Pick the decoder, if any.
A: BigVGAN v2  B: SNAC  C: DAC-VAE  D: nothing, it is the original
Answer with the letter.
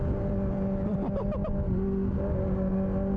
D